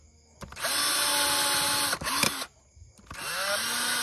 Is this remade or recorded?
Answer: recorded